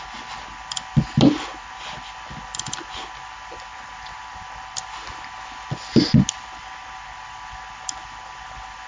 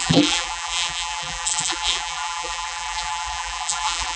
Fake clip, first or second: second